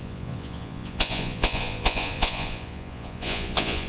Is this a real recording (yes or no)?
no